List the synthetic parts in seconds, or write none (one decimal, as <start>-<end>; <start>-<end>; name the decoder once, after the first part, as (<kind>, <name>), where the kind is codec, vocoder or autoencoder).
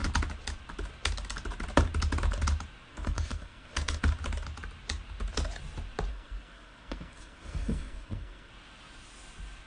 2.9-4.0 (codec, SNAC); 6.1-8.5